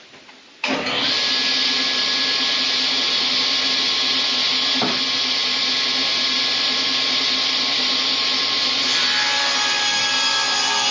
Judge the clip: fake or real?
real